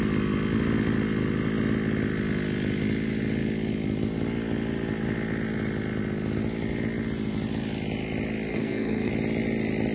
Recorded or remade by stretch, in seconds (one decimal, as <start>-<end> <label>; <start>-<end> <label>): 0.0-8.5 recorded; 8.5-9.1 remade; 9.1-9.9 recorded